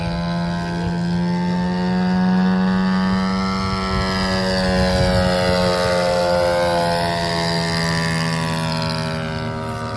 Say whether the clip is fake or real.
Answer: real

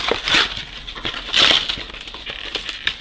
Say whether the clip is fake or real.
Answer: real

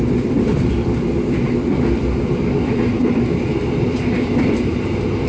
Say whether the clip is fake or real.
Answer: fake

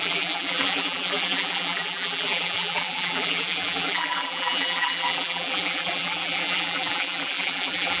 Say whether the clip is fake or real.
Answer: fake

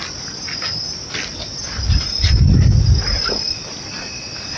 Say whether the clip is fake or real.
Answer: real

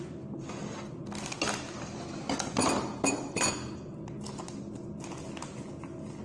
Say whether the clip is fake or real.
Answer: real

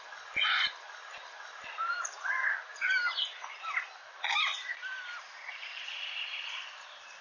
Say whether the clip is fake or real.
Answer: fake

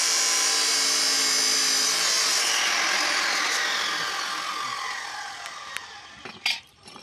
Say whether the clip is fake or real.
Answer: real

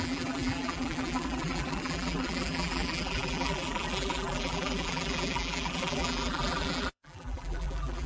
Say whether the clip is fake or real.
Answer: fake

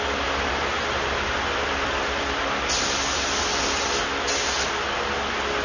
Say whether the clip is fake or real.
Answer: real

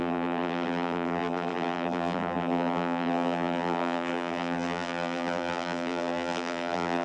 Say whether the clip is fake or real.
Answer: fake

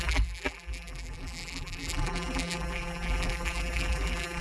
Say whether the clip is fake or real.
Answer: fake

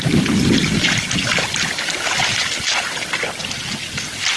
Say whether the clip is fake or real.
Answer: real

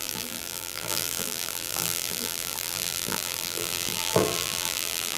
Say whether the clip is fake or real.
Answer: fake